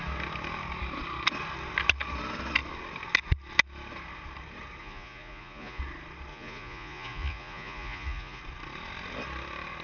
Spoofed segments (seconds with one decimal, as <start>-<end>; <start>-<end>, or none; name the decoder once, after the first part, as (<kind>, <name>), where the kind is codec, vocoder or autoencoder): 4.8-5.8 (vocoder, Vocos); 6.3-8.4